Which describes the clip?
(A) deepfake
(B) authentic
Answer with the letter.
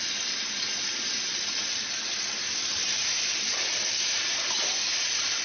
B